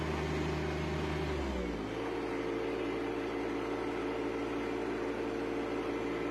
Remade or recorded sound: recorded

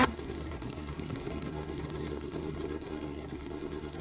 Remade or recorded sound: remade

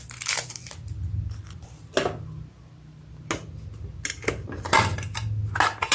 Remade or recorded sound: recorded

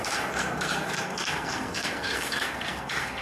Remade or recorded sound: remade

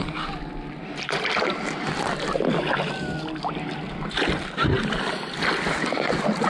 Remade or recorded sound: recorded